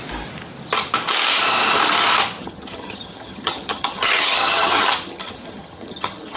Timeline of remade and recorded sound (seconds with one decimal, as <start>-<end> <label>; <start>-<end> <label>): 0.0-2.4 recorded; 2.4-6.4 remade